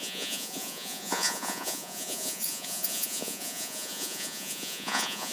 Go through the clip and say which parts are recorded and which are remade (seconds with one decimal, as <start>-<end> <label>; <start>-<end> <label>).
0.0-5.3 remade